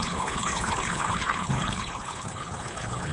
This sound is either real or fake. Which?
fake